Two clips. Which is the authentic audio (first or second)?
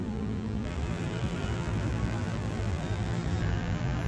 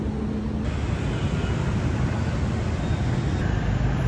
second